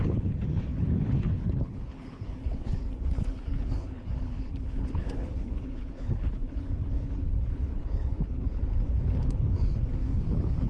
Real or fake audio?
fake